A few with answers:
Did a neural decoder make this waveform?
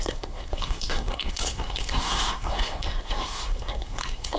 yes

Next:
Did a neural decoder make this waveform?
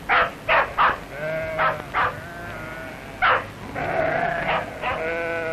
no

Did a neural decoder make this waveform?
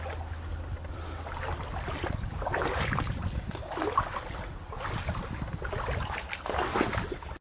no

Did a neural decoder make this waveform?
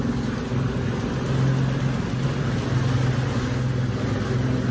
no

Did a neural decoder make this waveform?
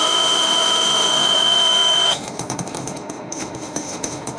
yes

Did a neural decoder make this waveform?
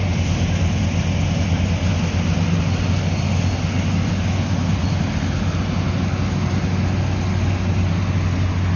no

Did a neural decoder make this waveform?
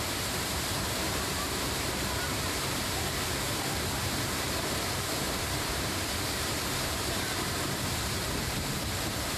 yes